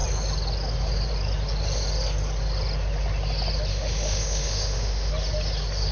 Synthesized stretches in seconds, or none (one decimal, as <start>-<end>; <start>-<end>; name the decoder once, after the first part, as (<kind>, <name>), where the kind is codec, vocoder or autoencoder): 3.7-5.1 (autoencoder, DAC-VAE)